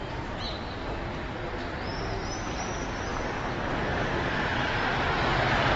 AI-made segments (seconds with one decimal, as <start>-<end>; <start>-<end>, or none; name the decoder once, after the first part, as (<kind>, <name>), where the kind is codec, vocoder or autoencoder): 3.9-5.3 (vocoder, BigVGAN v2)